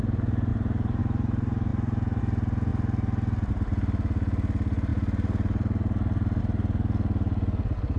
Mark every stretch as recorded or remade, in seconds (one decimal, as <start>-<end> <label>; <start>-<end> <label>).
0.0-0.5 recorded; 0.5-1.0 remade; 1.0-8.0 recorded